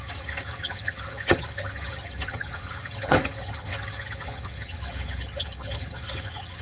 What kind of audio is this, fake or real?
fake